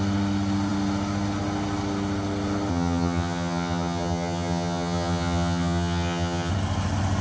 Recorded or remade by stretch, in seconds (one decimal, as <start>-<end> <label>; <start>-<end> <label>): 0.0-2.7 recorded; 2.7-6.5 remade; 6.5-7.2 recorded